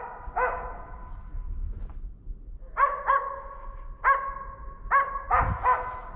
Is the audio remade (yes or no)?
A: no